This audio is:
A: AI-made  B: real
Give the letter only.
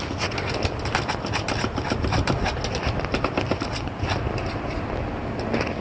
B